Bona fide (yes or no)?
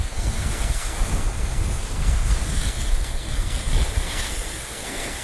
no